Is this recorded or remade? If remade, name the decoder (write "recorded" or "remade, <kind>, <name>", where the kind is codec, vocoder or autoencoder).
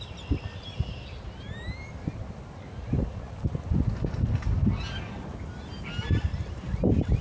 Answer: recorded